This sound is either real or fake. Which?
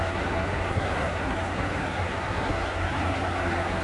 fake